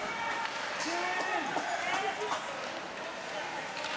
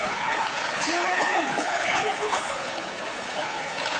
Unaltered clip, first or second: first